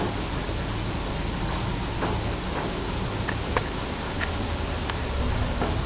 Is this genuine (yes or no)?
yes